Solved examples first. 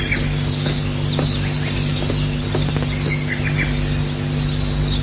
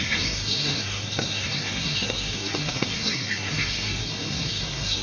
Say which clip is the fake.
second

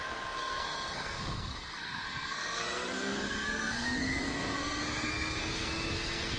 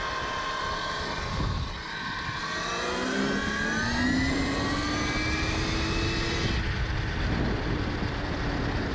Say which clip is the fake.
first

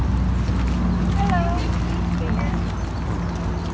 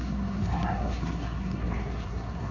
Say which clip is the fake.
second